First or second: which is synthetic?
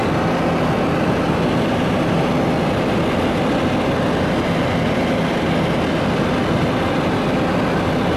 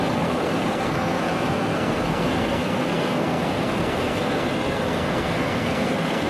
second